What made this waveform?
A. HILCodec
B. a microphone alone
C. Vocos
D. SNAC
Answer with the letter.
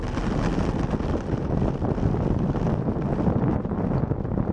B